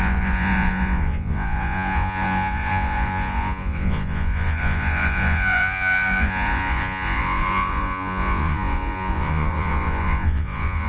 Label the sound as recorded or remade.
remade